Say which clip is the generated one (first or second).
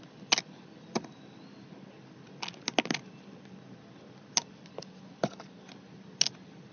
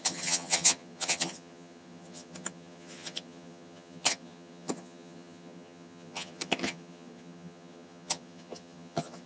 second